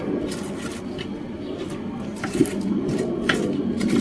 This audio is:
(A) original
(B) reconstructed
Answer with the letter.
A